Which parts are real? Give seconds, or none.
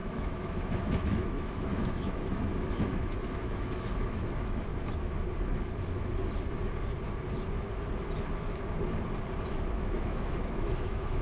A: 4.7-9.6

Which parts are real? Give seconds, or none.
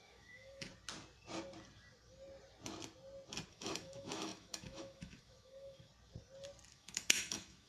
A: 0.7-3.5; 5.9-6.7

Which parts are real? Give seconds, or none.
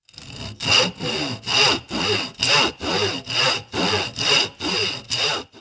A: 0.0-5.6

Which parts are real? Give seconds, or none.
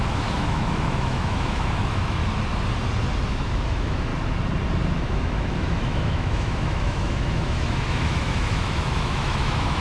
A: 2.2-3.3; 4.1-4.9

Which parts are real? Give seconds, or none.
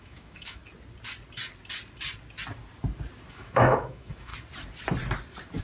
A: 0.6-3.3; 4.3-5.6